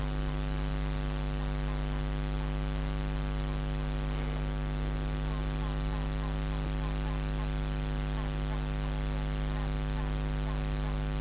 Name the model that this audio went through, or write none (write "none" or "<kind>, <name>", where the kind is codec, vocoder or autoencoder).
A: none